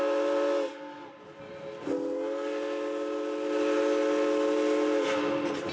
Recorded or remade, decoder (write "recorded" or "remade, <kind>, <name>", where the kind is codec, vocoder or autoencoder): recorded